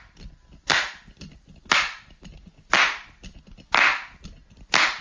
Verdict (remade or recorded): recorded